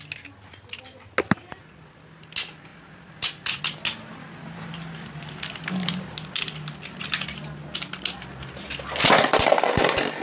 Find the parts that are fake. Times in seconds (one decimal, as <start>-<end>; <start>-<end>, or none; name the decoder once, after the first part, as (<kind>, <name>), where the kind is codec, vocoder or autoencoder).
none

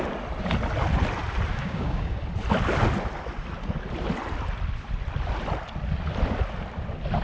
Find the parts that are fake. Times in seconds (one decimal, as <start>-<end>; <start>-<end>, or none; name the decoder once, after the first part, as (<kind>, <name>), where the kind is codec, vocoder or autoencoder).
1.5-2.2 (codec, DAC)

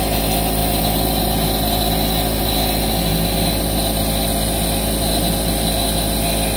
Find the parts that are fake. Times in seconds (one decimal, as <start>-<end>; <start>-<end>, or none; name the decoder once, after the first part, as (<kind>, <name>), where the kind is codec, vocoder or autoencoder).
none

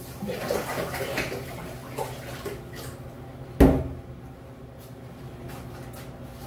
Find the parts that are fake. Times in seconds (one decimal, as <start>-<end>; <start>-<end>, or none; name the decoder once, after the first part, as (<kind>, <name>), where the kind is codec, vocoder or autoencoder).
none

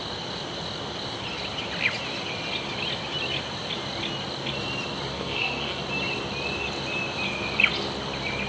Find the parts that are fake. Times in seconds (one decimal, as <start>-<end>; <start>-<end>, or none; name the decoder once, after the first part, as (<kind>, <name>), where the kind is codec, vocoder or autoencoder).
5.1-5.8 (codec, SNAC)

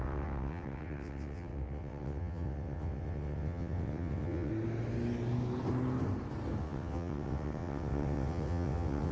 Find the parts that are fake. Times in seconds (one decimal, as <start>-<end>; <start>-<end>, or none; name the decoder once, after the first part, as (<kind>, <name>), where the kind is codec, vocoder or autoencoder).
0.0-4.5 (vocoder, WaveNeXt); 6.6-9.1